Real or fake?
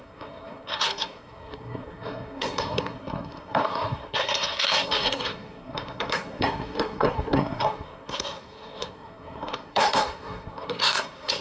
fake